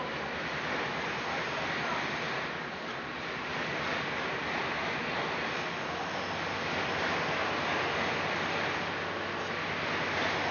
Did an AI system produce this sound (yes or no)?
no